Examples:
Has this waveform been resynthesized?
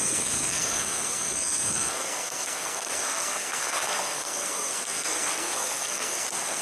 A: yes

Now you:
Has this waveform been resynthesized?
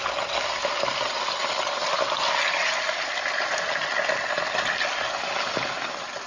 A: no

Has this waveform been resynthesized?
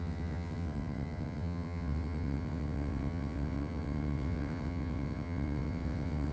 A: yes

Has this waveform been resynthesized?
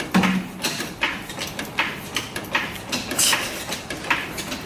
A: no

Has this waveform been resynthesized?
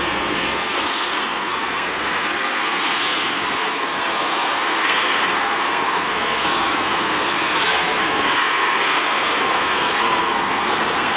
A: yes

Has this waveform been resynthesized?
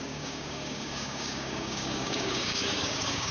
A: yes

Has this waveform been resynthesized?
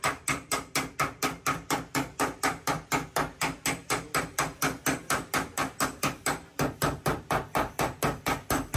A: no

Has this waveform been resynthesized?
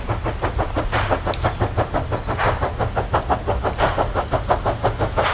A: no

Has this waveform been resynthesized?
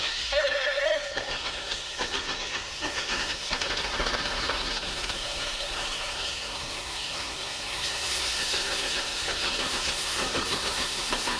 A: yes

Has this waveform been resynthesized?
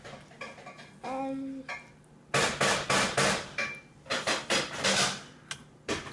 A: no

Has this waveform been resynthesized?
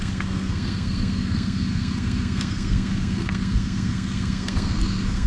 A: yes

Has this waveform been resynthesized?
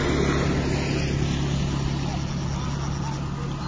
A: no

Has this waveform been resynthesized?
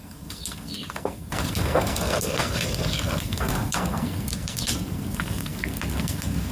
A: yes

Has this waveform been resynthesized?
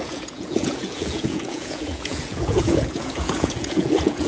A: yes